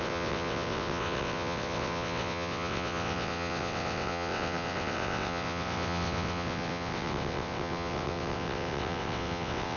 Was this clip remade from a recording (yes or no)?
yes